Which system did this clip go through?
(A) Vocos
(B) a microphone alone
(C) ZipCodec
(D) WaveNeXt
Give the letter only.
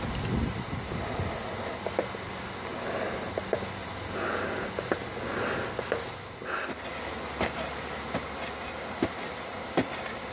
B